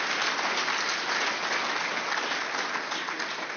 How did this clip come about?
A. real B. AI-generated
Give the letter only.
A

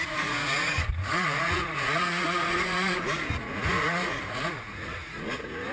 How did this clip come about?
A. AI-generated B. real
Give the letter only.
A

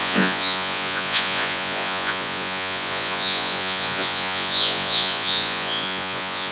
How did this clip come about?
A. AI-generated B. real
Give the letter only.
A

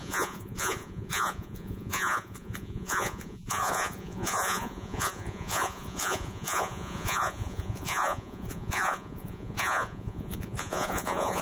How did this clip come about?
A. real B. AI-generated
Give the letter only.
B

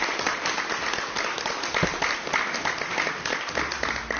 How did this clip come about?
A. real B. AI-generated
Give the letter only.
A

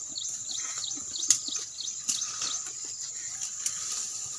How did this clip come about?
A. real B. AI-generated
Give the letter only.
A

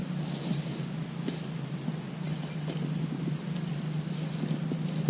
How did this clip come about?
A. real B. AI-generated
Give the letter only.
A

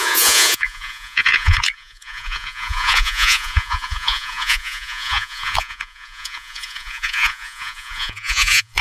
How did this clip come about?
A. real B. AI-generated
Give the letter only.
B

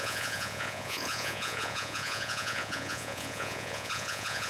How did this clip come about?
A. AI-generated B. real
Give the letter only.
A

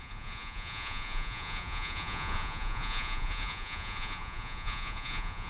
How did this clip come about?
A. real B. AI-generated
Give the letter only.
B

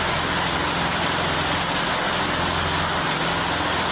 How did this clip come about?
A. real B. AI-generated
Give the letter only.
A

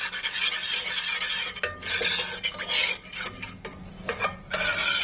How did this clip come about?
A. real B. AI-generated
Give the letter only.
A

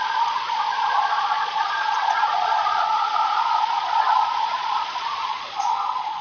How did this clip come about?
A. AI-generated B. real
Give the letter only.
A